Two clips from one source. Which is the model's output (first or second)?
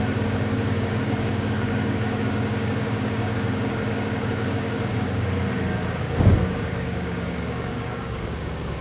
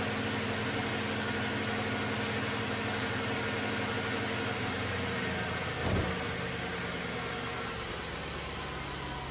first